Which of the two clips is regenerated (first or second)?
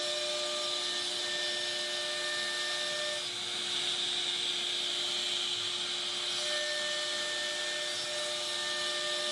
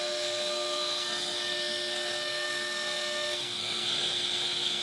second